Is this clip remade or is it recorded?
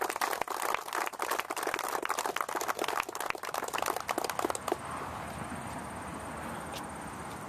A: recorded